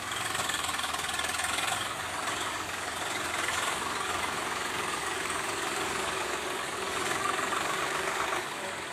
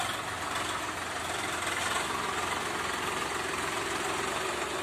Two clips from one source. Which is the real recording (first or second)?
second